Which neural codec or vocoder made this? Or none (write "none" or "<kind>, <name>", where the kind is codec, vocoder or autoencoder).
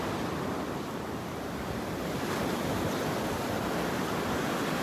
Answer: none